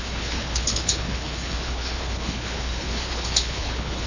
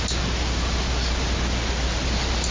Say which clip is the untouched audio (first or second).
second